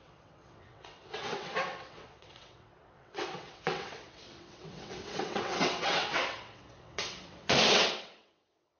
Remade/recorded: remade